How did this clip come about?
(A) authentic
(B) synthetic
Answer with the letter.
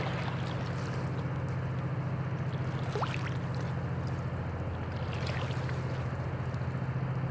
A